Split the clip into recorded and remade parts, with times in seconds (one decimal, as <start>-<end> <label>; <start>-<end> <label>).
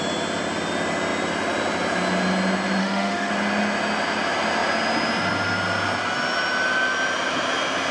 0.0-2.8 recorded; 2.8-3.3 remade; 3.3-7.9 recorded